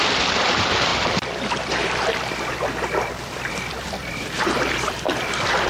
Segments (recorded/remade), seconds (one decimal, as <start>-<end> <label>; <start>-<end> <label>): 0.0-5.7 remade